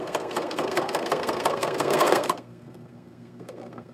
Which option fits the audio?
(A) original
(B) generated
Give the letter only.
B